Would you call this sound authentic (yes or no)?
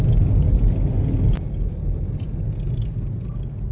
yes